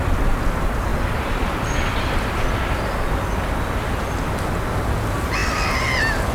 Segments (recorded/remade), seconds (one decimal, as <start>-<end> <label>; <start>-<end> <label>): 0.0-6.3 recorded